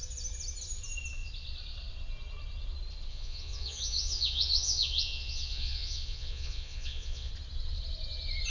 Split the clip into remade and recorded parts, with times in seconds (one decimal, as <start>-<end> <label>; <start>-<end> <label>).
0.0-3.1 recorded; 3.1-7.3 remade; 7.3-8.5 recorded